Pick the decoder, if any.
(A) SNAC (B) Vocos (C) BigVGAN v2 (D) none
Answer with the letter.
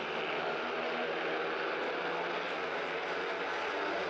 D